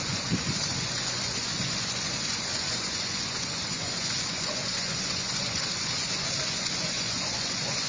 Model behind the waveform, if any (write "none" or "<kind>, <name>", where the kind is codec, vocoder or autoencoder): vocoder, Vocos